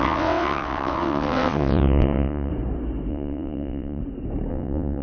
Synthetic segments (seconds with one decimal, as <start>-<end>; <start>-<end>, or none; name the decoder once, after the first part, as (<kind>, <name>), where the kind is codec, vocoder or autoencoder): 0.0-2.5 (vocoder, WaveNeXt); 3.1-4.0; 4.5-5.0